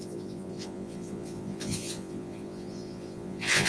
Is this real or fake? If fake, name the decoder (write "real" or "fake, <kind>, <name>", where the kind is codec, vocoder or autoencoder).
fake, vocoder, Vocos